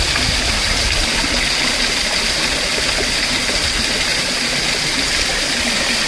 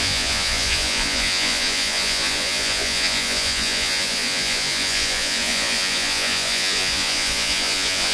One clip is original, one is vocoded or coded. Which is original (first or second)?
first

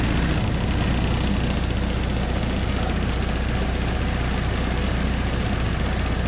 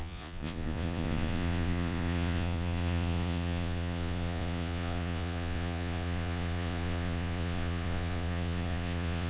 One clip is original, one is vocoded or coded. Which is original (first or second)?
first